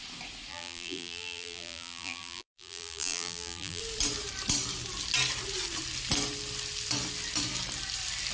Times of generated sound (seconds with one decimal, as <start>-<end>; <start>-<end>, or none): 0.5-3.8